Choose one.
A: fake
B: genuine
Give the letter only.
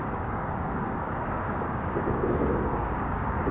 A